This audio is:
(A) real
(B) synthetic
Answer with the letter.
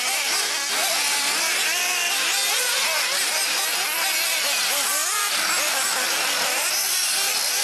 A